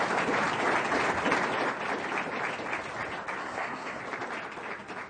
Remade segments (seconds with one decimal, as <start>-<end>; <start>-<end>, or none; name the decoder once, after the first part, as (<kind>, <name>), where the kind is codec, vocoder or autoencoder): 3.4-4.0 (codec, SNAC)